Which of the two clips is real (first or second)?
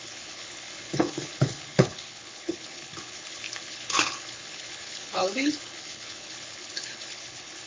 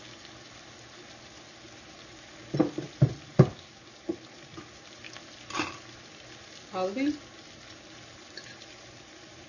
second